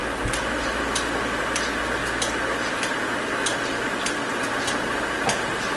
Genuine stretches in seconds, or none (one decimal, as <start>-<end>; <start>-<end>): 0.0-5.8